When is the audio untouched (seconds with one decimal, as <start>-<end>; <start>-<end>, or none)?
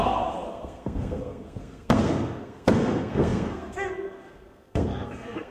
none